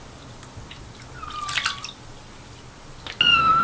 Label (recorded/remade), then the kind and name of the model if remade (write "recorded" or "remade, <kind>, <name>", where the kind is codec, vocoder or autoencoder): recorded